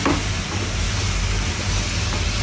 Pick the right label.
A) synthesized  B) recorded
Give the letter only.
B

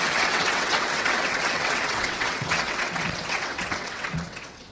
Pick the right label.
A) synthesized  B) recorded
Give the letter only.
A